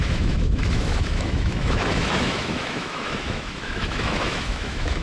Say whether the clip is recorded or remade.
remade